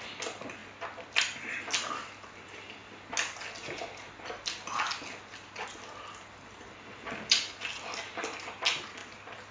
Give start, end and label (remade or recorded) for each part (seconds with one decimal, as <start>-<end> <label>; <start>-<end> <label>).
0.0-9.5 recorded